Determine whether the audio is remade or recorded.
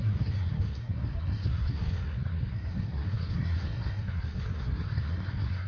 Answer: remade